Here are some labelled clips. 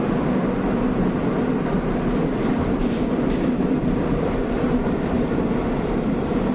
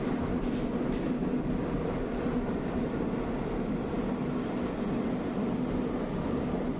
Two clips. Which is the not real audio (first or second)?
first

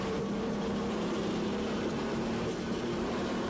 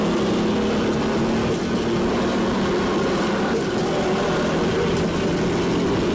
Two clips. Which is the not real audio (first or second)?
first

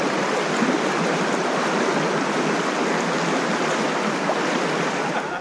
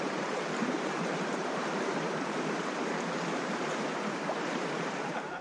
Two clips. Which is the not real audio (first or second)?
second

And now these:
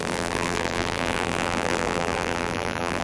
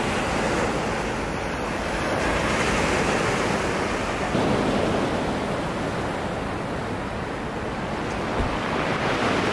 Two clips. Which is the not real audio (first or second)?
first